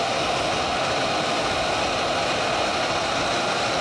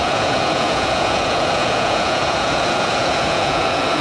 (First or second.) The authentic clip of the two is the first